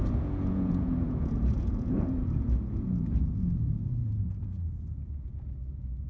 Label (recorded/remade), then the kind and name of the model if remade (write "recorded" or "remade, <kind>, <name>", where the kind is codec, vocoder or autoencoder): remade, vocoder, Vocos